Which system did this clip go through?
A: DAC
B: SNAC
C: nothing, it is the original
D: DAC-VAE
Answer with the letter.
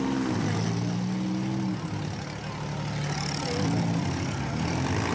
C